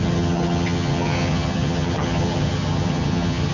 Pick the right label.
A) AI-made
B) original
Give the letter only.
A